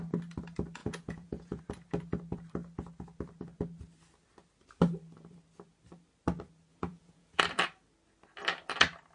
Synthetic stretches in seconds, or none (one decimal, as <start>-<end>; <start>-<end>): 0.8-1.6; 6.7-7.4